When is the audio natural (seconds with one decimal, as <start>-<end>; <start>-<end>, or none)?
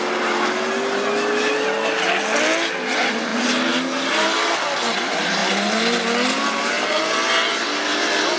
0.0-8.4